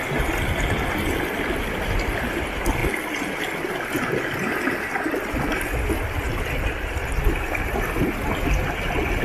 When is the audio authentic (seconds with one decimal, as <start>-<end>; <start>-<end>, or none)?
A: 0.0-9.2